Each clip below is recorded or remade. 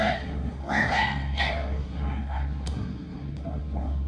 remade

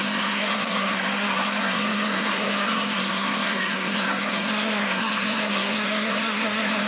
remade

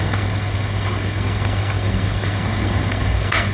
remade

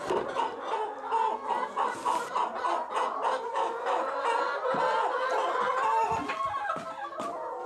recorded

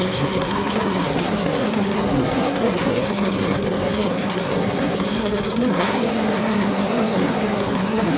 remade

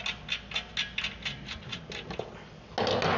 recorded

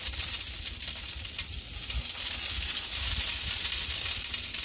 recorded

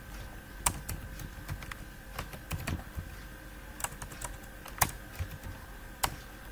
recorded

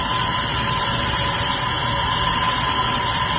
recorded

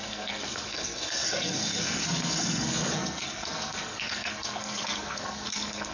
remade